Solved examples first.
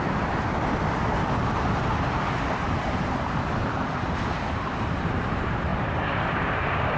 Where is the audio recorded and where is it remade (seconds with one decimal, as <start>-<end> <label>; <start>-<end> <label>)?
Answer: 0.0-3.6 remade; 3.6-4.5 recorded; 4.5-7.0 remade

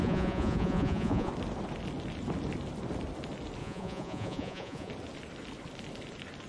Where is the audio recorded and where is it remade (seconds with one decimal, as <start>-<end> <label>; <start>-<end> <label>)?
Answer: 0.0-1.3 remade; 1.3-3.6 recorded; 3.6-4.9 remade; 4.9-6.5 recorded

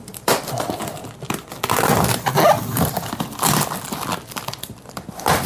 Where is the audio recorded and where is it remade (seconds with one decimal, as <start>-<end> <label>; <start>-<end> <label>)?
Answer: 0.0-1.0 remade; 1.0-4.3 recorded; 4.3-5.5 remade

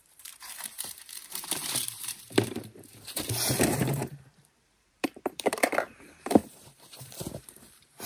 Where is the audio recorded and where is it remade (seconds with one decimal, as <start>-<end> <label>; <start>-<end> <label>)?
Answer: 0.0-8.1 remade

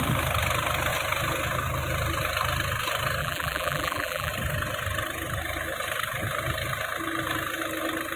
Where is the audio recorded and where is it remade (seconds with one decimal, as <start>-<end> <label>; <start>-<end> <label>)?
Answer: 0.0-3.2 recorded; 3.2-4.3 remade; 4.3-8.2 recorded